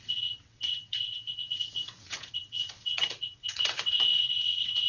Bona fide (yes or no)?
no